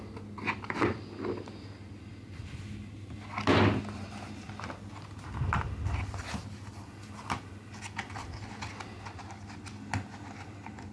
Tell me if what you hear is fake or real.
real